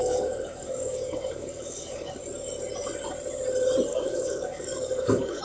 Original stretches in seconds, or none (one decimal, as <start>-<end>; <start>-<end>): 2.2-3.9